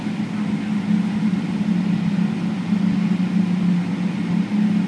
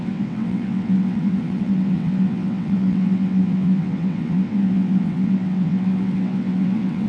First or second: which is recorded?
first